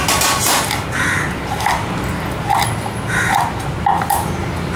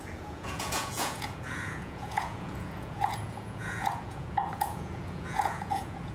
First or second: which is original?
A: first